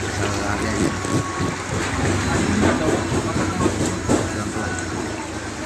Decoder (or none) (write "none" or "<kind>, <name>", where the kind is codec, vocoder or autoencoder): none